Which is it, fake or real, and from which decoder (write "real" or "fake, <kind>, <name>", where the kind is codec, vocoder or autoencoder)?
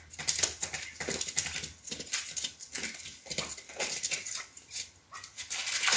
real